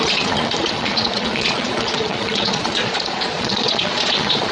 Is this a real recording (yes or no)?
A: no